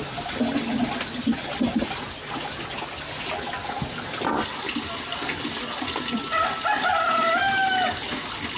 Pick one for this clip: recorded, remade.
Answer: recorded